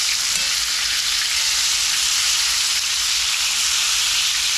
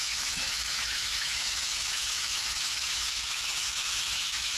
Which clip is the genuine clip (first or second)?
first